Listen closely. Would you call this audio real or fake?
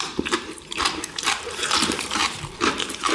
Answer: fake